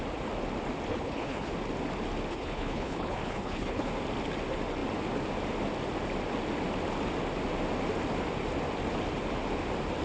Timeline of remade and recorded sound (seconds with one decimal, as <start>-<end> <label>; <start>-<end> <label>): 0.0-0.9 recorded; 0.9-1.5 remade; 1.5-2.3 recorded; 2.3-3.9 remade; 3.9-10.0 recorded